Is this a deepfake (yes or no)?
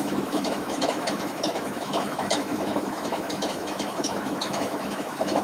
yes